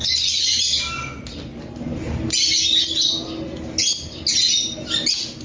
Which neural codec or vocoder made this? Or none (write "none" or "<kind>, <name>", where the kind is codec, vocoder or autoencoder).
none